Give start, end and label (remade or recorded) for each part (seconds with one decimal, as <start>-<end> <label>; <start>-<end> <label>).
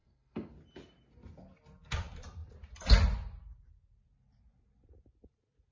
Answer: 0.0-0.5 remade; 0.5-5.7 recorded